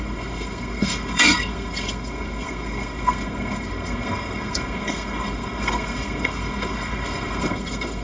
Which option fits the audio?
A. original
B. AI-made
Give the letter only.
B